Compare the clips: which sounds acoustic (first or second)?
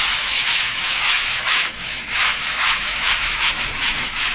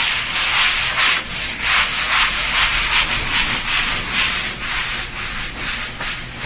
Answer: second